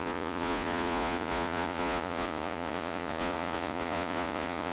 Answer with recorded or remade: remade